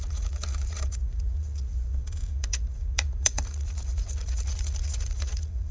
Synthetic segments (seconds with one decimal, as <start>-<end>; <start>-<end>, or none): 0.0-5.7